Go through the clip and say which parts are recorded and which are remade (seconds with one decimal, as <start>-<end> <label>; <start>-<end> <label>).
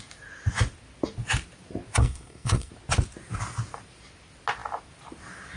0.0-2.0 recorded; 2.0-2.7 remade; 2.7-5.6 recorded